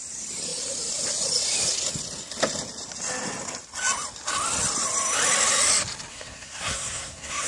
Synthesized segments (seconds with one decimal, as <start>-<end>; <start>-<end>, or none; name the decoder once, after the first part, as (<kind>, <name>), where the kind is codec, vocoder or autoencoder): 6.1-7.5 (codec, SNAC)